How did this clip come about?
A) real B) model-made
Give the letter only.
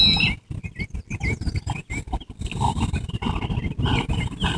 A